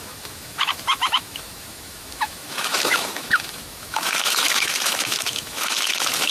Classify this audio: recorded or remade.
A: remade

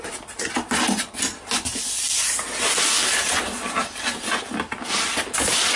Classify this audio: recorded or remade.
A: recorded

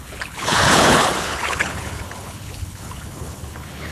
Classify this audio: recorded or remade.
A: remade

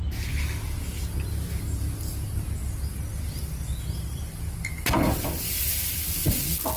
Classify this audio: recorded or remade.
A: recorded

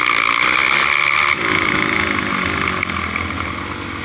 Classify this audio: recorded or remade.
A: recorded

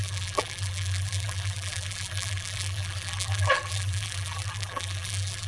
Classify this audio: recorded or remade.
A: remade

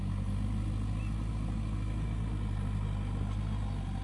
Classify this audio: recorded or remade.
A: recorded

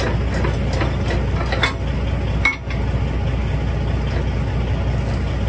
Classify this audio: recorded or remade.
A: recorded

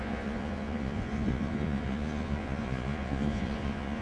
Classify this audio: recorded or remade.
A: remade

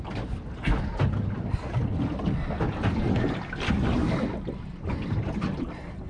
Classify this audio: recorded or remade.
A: recorded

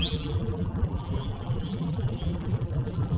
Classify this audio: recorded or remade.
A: remade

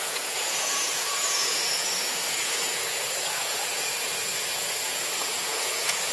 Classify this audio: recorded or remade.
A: remade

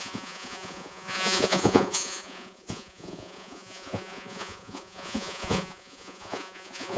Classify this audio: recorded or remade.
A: remade